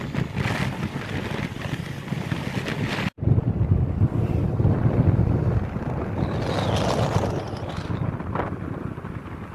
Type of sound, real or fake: real